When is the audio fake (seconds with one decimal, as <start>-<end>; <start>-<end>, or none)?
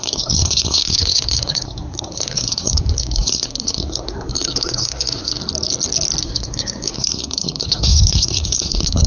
0.0-5.4; 6.2-9.1